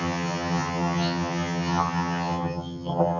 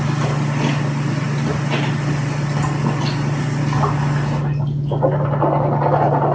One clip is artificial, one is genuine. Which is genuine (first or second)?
second